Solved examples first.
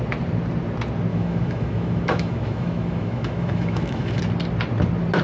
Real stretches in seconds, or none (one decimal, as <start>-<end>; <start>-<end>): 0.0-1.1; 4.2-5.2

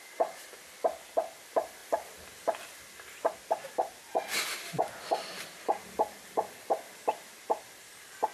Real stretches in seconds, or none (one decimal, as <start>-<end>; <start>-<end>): 0.0-8.3

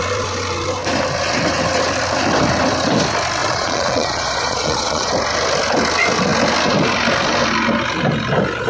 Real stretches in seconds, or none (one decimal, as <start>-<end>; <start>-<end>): 0.0-3.4; 5.1-8.7

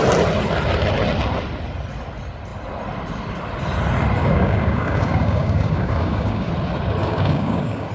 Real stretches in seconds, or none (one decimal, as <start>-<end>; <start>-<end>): 0.0-4.2; 6.5-7.0

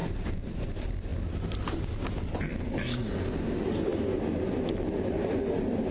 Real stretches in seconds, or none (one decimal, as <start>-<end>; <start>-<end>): 0.7-5.9

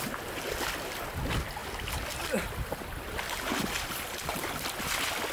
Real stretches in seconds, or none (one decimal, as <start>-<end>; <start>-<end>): 0.0-5.3

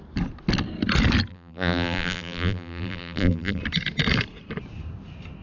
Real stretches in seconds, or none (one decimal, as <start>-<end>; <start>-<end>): 0.0-1.3; 3.6-5.4